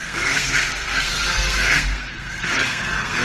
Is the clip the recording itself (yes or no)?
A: no